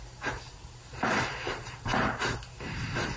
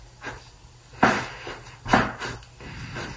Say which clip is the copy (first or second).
first